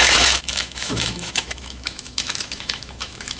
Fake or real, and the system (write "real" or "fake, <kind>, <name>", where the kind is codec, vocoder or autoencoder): fake, autoencoder, DAC-VAE